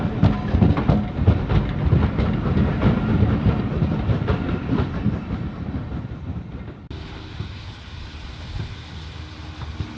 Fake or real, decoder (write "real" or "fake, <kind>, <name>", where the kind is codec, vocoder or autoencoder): real